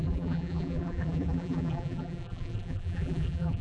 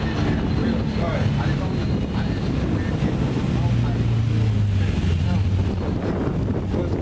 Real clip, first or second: second